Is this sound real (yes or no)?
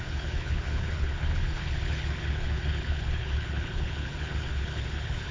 no